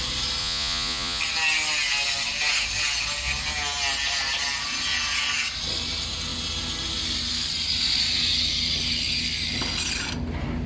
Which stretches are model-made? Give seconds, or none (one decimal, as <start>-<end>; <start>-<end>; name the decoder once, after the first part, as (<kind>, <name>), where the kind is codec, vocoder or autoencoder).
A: 0.4-1.2 (vocoder, Vocos)

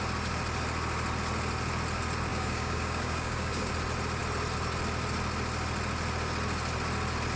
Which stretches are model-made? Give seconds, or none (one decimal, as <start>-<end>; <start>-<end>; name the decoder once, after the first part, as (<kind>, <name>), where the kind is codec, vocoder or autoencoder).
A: 2.3-3.7 (codec, DAC)

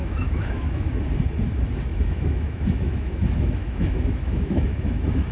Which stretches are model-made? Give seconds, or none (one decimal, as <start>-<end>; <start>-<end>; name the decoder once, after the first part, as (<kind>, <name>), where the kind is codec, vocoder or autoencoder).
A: 0.0-1.0 (autoencoder, DAC-VAE); 1.9-5.3

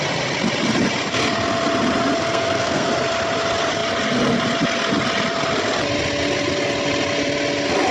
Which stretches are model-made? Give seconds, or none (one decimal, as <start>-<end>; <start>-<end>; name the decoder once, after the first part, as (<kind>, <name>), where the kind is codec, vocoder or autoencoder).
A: 2.2-2.9 (codec, SNAC)

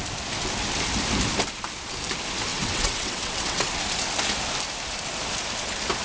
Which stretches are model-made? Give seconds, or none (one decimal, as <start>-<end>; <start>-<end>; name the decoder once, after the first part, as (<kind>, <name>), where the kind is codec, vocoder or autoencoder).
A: 2.5-3.7 (vocoder, WaveNeXt)

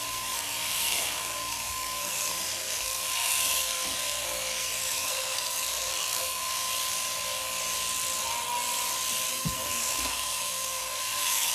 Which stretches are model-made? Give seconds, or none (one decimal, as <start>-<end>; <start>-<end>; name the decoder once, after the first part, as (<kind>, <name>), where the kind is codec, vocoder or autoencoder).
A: 0.0-6.7 (codec, SNAC); 9.3-11.5